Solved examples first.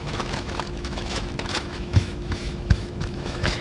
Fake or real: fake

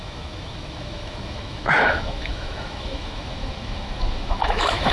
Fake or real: fake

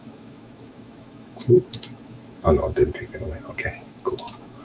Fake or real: fake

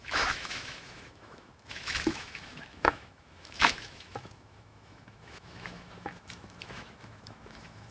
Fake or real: fake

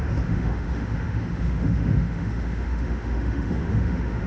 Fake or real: fake